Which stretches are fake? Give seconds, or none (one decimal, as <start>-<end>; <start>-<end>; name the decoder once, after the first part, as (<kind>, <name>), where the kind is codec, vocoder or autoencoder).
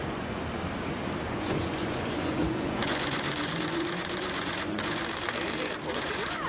0.0-0.4 (vocoder, Vocos); 1.2-5.0; 5.9-6.5